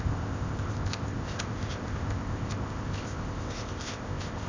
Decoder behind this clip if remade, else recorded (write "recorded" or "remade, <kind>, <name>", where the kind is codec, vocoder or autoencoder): remade, codec, ZipCodec